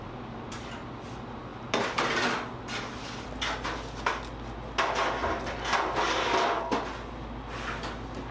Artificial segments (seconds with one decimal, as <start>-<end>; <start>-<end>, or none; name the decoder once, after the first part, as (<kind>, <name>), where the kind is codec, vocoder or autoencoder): none